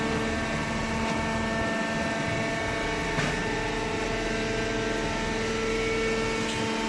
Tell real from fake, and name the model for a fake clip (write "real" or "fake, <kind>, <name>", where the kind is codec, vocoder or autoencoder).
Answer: real